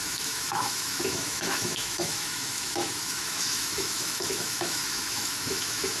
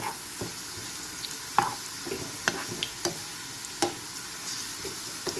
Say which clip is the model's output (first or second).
first